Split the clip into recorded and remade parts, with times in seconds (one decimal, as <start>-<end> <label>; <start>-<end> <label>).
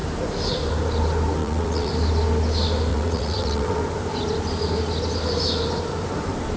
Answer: 0.0-1.4 recorded; 1.4-1.9 remade; 1.9-2.9 recorded; 2.9-3.8 remade; 3.8-6.6 recorded